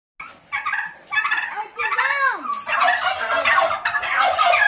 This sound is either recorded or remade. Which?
recorded